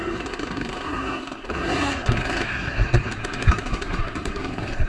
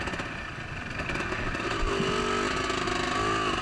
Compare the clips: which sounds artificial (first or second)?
first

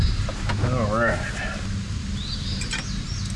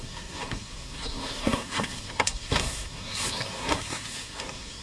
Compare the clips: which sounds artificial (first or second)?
second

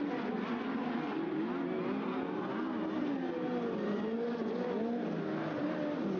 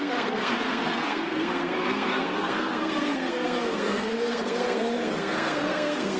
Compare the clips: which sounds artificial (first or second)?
second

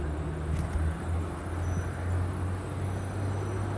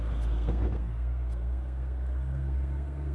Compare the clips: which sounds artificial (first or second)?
second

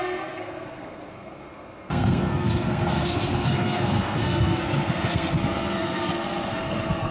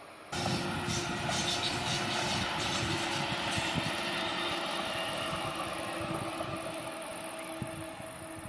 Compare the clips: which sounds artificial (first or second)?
first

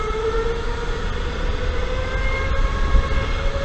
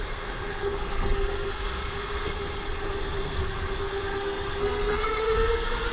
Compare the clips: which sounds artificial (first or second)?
second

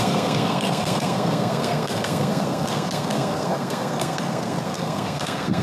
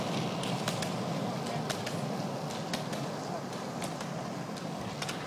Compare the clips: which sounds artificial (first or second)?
first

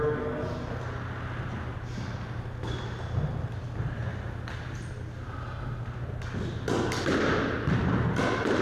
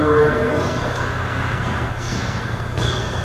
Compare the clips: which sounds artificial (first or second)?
second